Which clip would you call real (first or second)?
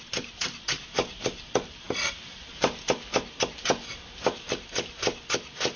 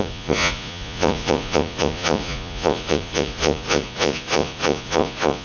first